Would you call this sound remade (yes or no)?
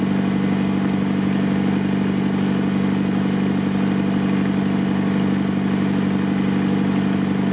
no